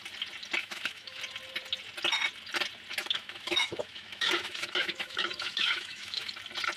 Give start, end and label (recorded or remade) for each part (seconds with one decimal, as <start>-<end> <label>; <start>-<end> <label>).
0.0-0.6 recorded; 0.6-1.2 remade; 1.2-3.0 recorded; 3.0-6.3 remade; 6.3-6.8 recorded